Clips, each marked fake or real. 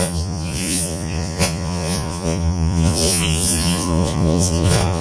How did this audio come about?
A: fake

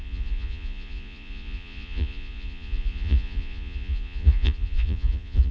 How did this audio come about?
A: fake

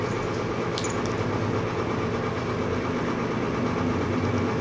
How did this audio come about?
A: real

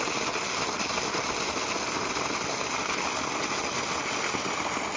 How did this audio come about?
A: real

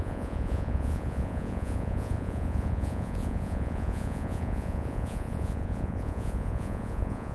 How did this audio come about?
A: fake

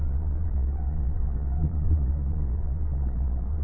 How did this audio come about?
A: fake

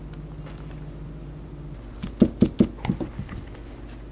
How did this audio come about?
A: real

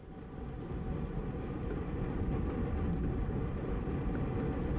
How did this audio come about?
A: real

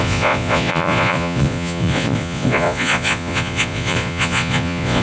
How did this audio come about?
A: fake